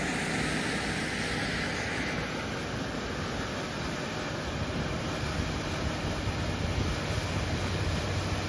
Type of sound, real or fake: real